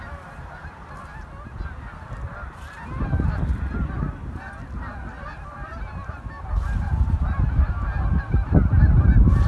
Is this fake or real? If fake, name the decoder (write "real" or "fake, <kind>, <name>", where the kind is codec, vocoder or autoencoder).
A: real